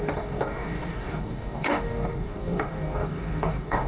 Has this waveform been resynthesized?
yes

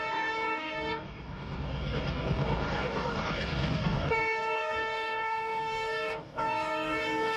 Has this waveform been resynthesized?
yes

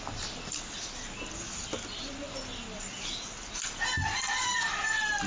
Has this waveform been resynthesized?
no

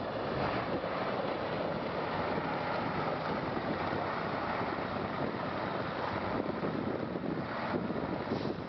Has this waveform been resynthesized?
no